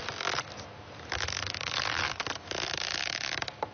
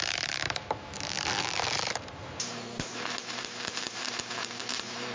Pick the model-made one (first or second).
second